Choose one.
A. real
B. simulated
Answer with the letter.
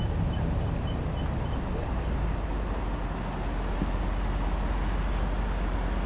A